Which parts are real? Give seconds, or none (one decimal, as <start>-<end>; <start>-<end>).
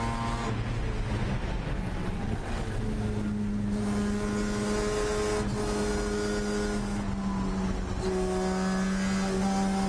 0.0-1.8; 2.8-9.9